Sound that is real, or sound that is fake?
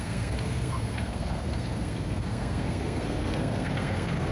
fake